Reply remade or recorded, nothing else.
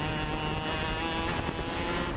recorded